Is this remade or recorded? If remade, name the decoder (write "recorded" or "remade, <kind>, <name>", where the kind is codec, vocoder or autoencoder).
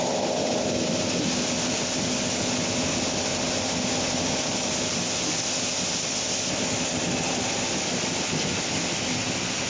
recorded